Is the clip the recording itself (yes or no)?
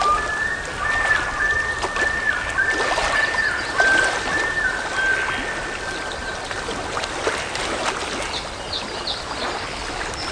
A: yes